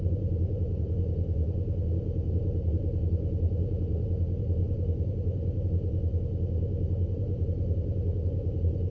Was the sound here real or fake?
fake